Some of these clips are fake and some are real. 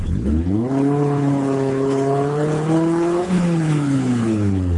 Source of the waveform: fake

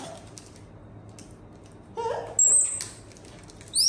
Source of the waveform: real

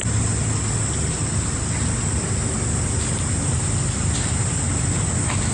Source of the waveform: real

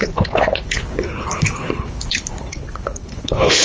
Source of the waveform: fake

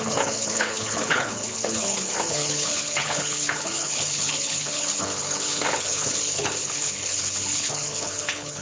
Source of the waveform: fake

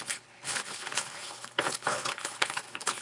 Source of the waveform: fake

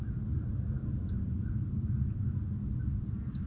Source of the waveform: real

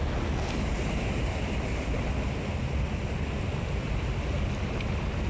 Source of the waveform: real